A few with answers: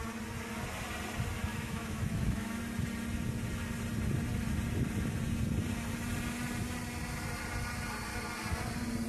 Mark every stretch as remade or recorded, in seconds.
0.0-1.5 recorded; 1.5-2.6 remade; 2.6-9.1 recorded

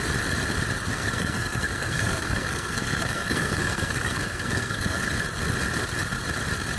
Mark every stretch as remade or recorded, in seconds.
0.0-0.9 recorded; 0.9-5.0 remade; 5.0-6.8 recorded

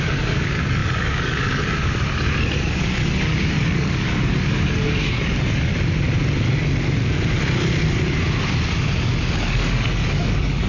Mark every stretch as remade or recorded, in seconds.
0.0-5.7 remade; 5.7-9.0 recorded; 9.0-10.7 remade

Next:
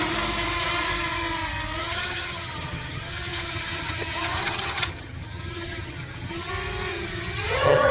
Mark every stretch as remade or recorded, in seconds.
0.0-1.8 recorded; 1.8-6.5 remade; 6.5-6.9 recorded; 6.9-7.9 remade